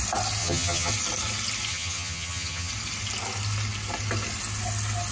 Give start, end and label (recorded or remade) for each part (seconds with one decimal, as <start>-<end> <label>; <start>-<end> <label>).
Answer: 0.0-0.4 recorded; 0.4-0.9 remade; 0.9-1.7 recorded; 1.7-2.7 remade; 2.7-5.1 recorded